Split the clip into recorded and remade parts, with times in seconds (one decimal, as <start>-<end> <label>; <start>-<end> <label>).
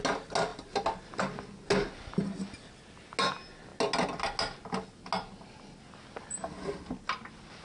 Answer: 0.0-7.6 recorded